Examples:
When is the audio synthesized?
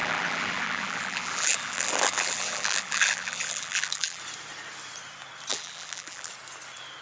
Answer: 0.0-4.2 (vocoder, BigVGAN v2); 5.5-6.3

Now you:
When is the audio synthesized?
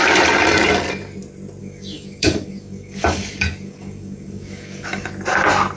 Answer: 1.6-5.1 (codec, DAC)